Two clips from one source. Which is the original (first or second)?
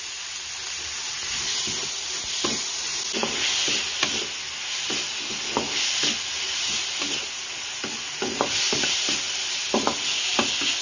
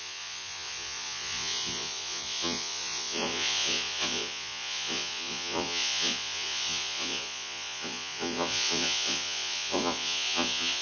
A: first